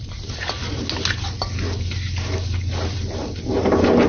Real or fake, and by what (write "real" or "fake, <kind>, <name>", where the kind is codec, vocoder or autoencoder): real